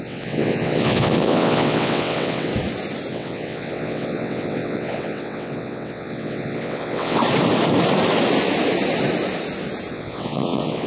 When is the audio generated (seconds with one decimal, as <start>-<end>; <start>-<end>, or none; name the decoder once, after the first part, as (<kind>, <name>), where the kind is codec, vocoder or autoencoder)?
0.0-2.5 (vocoder, WaveNeXt); 3.1-7.2; 9.9-10.9